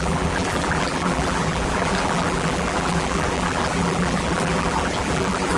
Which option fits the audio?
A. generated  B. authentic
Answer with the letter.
A